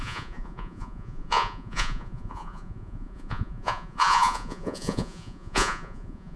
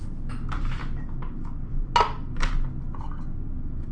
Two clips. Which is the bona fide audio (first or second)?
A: second